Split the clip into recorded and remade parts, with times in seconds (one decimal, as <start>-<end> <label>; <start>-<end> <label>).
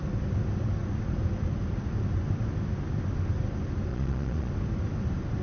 0.0-3.9 recorded; 3.9-4.5 remade; 4.5-5.4 recorded